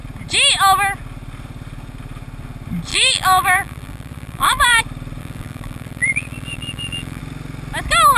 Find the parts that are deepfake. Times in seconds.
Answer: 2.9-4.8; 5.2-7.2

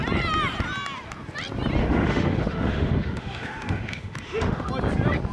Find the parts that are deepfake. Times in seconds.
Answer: 1.8-4.7